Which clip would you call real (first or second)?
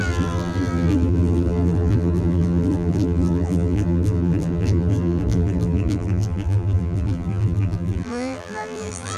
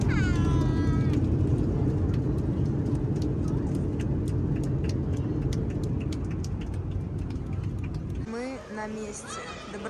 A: second